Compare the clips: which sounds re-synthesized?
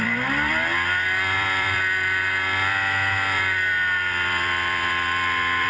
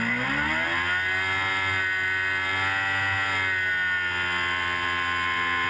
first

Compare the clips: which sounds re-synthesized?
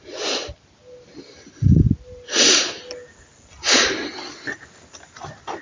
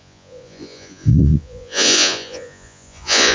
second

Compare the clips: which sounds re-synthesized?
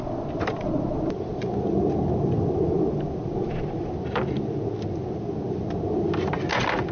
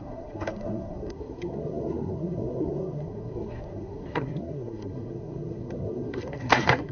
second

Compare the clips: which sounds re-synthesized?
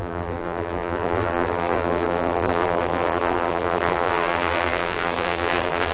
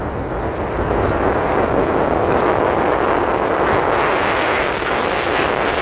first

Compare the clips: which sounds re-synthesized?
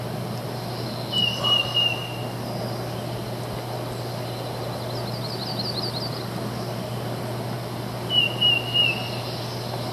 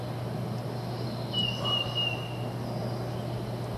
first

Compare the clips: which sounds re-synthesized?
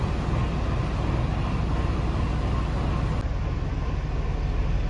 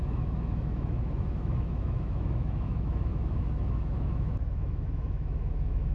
second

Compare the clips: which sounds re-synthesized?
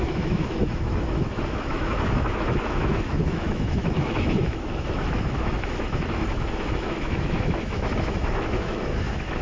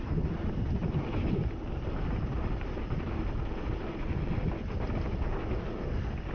first